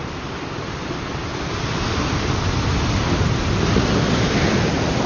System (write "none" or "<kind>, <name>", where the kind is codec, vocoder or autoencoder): none